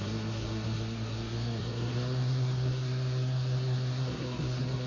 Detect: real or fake fake